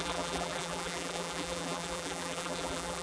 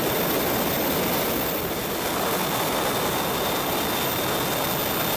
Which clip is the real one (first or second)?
second